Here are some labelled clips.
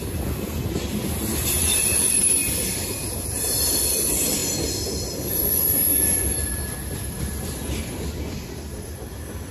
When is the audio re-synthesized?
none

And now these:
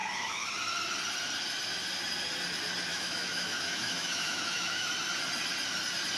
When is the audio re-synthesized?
0.0-0.5 (autoencoder, DAC-VAE); 2.9-4.9